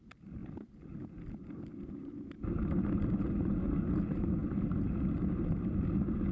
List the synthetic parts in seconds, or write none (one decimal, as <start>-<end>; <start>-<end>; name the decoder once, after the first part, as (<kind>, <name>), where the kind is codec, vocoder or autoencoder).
none